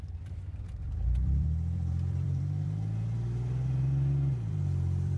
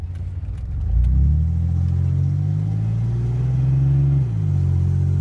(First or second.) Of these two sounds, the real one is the second